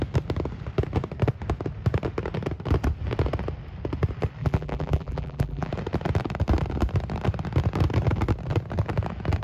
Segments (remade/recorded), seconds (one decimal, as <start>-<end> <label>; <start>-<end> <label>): 0.0-4.4 recorded; 4.4-5.7 remade; 5.7-9.4 recorded